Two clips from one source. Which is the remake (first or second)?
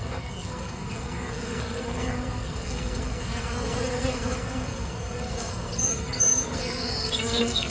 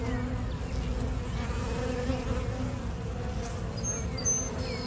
first